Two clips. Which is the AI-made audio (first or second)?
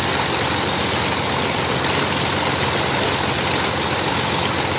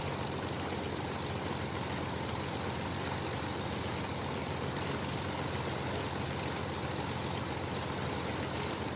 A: first